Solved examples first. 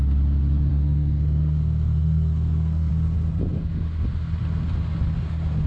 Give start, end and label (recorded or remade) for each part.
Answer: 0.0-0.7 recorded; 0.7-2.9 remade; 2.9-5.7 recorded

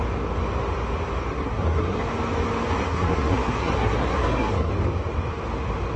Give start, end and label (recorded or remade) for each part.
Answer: 0.0-1.3 recorded; 1.3-2.0 remade; 2.0-2.8 recorded; 2.8-4.7 remade; 4.7-6.0 recorded

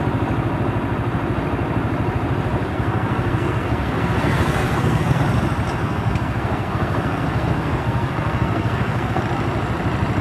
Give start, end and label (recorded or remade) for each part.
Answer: 0.0-2.7 recorded; 2.7-5.2 remade; 5.2-5.8 recorded; 5.8-9.2 remade; 9.2-10.2 recorded